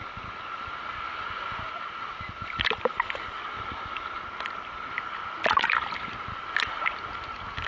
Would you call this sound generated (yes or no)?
no